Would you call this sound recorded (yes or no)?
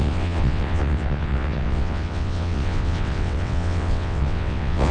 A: no